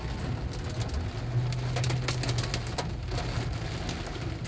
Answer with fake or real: real